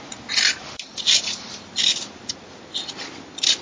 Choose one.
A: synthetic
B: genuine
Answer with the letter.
B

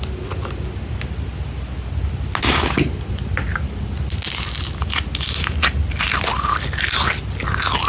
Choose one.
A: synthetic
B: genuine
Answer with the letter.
B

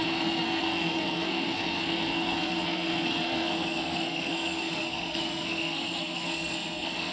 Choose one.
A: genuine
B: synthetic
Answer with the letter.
B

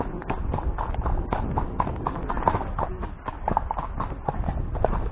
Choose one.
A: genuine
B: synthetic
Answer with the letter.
A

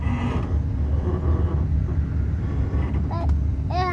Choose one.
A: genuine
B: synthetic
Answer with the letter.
A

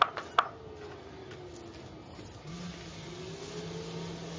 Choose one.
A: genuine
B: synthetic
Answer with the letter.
A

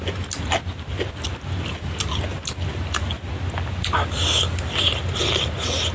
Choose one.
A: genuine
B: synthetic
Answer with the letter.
A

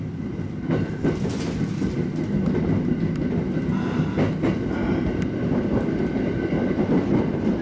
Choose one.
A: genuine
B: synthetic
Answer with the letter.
A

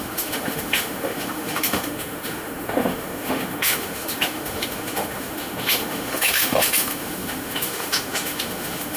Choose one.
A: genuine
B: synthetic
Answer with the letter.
B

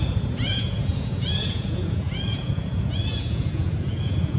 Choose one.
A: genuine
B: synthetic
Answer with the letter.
B